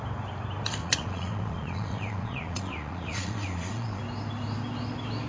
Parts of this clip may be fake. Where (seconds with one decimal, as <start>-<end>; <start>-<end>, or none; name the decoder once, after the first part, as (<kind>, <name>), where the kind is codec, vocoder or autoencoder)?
0.8-4.0 (vocoder, Vocos)